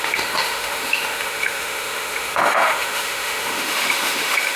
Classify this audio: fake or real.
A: fake